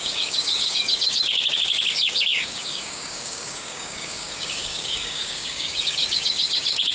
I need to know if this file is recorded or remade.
remade